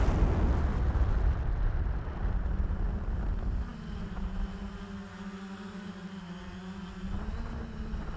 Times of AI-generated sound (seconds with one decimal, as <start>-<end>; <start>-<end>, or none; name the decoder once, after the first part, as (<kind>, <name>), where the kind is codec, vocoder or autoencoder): none